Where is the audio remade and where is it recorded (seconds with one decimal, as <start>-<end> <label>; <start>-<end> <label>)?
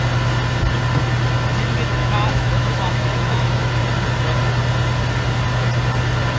0.0-2.0 recorded; 2.0-3.8 remade; 3.8-6.4 recorded